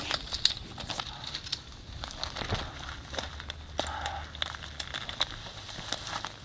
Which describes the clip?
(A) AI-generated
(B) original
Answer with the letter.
B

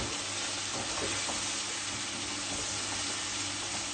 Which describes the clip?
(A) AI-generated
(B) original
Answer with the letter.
B